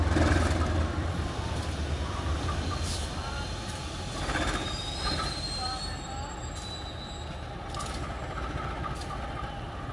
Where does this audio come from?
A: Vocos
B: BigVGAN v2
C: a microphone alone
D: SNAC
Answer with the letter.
C